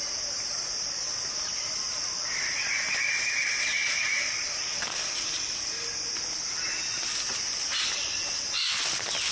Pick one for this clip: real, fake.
real